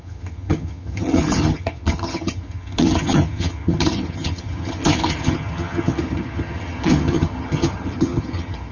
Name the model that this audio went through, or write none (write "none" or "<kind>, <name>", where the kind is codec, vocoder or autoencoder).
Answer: vocoder, HiFi-GAN